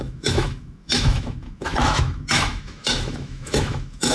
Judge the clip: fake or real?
fake